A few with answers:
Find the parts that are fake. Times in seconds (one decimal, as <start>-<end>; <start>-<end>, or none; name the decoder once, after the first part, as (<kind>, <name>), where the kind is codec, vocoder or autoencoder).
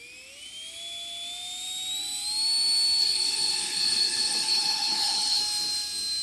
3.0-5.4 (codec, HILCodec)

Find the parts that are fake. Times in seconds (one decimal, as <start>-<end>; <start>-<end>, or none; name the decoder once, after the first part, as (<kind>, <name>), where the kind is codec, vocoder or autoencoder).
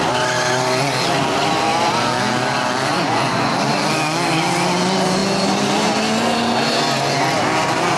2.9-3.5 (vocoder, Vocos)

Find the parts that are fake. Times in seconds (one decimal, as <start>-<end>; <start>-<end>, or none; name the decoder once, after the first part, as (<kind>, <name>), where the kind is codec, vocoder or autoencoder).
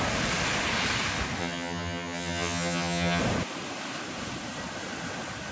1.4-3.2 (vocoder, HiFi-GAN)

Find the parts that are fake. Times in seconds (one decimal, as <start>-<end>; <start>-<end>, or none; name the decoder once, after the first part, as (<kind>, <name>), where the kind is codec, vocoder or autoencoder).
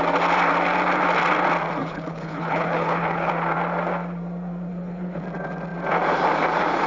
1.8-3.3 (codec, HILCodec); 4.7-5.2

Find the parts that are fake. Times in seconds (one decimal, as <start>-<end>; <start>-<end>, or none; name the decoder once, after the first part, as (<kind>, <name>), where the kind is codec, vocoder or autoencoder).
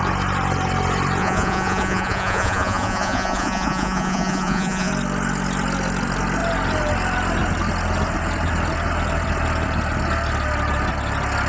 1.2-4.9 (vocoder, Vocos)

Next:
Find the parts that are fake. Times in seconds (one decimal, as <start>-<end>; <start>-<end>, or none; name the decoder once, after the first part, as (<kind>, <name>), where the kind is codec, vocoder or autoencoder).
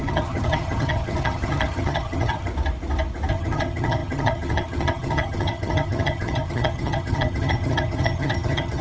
0.0-2.5 (vocoder, HiFi-GAN); 3.3-8.8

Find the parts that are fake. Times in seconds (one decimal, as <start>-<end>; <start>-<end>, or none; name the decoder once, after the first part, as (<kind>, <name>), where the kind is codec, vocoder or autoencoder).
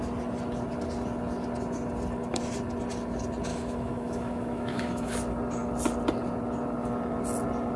3.5-5.1 (autoencoder, DAC-VAE)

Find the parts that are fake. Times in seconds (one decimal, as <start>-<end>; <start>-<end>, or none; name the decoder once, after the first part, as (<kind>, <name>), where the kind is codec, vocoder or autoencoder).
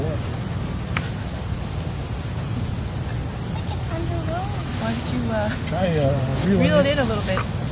none